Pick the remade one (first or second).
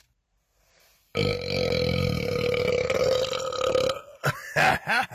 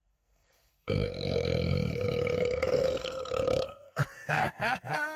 second